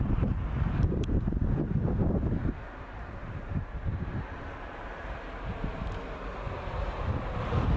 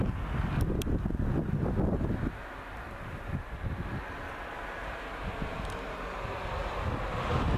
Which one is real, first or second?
second